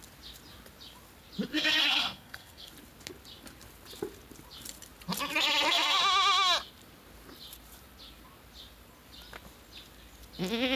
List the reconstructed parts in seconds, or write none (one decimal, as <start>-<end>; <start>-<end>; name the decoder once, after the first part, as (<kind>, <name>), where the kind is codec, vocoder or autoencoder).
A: 1.5-2.7 (codec, SNAC)